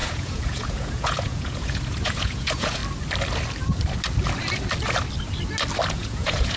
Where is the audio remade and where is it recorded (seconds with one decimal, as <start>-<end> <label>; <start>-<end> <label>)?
0.0-2.8 remade; 2.8-5.9 recorded; 5.9-6.6 remade